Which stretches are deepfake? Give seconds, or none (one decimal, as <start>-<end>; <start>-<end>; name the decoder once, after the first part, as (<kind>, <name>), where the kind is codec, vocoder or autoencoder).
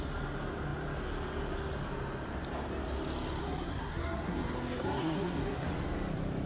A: 3.4-5.7 (codec, SNAC)